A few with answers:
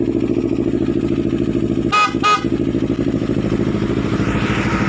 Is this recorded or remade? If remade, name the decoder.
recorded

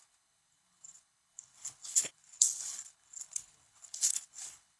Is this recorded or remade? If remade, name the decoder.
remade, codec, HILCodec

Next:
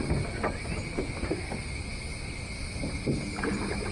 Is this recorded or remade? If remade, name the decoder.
recorded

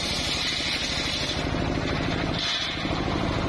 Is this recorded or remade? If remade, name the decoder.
recorded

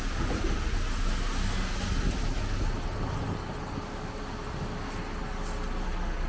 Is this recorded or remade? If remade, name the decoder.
recorded